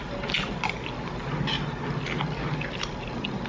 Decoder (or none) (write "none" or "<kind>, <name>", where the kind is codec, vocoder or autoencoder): none